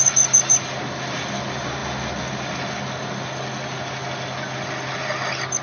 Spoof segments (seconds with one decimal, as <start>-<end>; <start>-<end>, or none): none